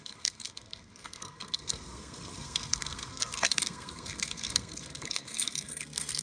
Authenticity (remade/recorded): remade